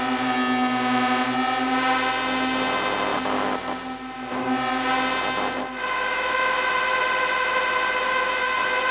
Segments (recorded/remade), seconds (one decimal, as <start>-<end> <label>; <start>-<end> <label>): 0.0-8.9 recorded